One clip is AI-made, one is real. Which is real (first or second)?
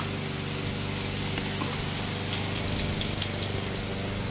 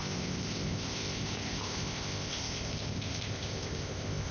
first